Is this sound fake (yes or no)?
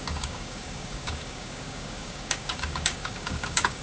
yes